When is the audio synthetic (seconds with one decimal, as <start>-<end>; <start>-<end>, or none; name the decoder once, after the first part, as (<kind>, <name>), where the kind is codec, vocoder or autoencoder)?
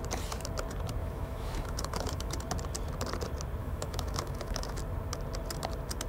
1.0-2.3 (autoencoder, DAC-VAE); 3.6-4.8